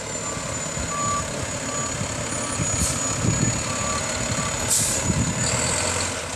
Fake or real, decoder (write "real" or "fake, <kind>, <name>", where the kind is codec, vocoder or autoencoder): real